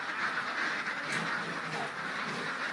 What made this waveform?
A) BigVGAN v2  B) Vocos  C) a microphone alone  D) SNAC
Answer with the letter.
C